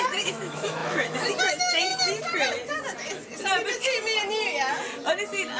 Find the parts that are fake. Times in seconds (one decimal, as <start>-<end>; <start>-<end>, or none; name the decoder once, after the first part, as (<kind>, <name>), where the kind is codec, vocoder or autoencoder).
0.0-1.9 (autoencoder, DAC-VAE)